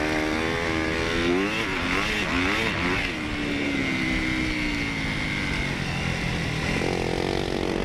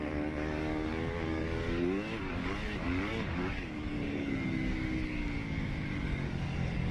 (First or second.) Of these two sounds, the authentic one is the first